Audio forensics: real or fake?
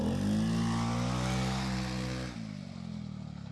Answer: real